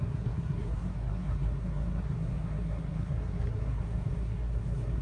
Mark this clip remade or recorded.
remade